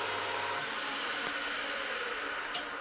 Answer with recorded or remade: recorded